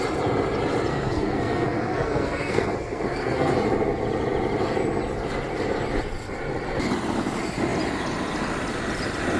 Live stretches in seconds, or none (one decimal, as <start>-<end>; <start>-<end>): 0.0-0.9; 3.5-9.4

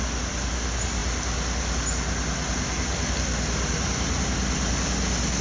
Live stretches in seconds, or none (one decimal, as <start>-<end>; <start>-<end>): 0.0-5.4

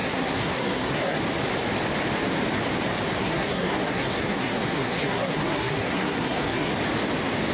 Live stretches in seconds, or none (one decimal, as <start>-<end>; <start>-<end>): 1.2-3.2; 6.7-7.5

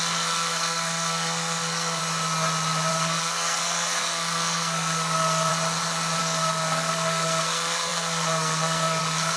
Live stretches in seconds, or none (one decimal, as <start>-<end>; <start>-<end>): 2.0-2.9; 5.5-6.2